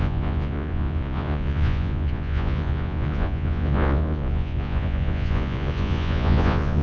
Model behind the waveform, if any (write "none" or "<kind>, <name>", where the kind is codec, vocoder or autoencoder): vocoder, Vocos